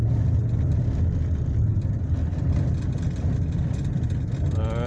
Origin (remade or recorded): recorded